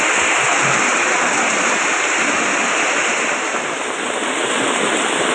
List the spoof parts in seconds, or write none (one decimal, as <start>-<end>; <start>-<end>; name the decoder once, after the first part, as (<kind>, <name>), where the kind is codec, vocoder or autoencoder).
none